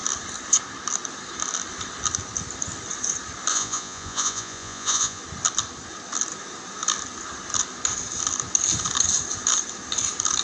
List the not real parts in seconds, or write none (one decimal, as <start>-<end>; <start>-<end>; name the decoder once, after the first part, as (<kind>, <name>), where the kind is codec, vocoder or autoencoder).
3.5-5.2 (vocoder, Vocos)